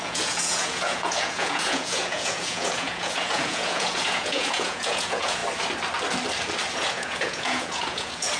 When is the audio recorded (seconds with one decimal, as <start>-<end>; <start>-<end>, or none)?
5.4-6.7